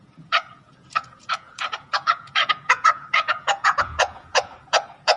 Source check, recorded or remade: remade